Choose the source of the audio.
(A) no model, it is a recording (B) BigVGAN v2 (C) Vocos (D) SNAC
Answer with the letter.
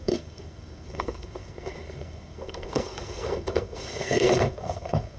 D